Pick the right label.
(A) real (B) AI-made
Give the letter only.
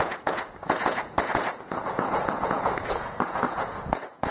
B